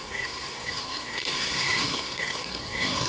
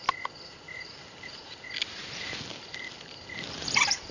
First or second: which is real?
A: second